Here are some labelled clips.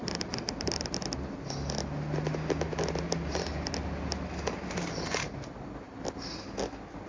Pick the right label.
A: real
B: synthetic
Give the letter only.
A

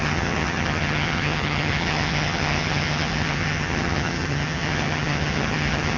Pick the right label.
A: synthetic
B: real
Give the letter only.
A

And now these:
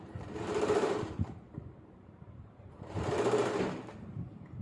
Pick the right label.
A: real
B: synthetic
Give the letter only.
B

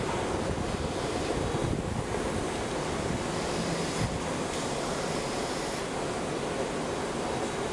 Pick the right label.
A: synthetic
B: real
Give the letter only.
B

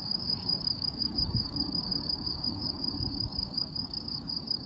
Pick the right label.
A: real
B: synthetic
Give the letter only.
B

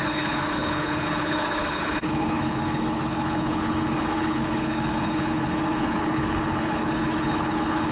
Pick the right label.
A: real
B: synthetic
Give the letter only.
B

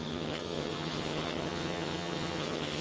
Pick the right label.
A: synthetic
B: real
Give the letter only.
A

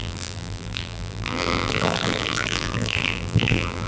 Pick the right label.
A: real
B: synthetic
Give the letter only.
B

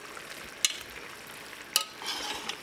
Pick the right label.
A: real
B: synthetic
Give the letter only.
A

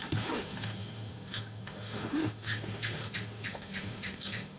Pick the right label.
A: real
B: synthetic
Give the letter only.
B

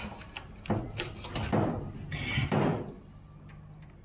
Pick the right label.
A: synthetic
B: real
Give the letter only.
B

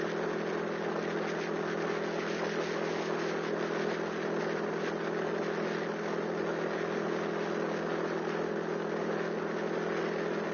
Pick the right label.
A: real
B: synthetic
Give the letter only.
A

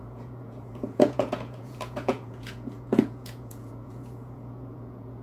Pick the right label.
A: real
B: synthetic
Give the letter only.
B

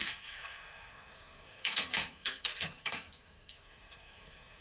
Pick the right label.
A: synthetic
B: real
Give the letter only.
A